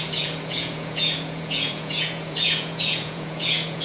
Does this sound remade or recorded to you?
remade